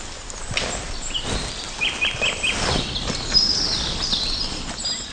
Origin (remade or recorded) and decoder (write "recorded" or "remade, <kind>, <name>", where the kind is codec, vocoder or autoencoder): recorded